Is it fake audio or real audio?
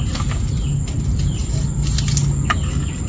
real